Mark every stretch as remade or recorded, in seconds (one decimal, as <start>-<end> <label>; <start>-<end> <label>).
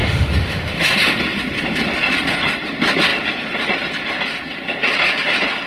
0.0-1.2 remade; 1.2-5.7 recorded